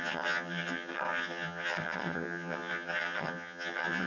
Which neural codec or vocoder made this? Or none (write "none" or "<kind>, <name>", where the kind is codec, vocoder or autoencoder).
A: vocoder, HiFi-GAN